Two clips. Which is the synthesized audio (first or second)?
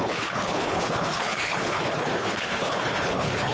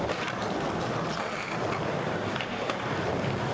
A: first